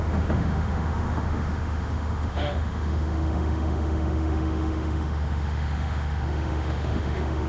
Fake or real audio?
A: fake